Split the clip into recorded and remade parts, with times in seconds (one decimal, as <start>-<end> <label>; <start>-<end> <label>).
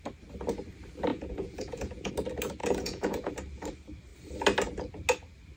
0.0-1.1 recorded; 1.1-2.1 remade; 2.1-2.6 recorded; 2.6-3.3 remade; 3.3-5.6 recorded